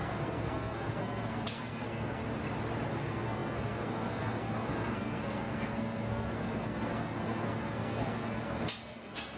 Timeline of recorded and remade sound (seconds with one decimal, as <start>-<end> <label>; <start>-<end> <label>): 0.0-2.2 remade; 2.2-2.9 recorded; 2.9-9.4 remade